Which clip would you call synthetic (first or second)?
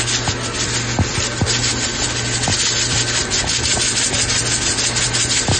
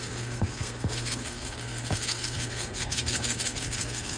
second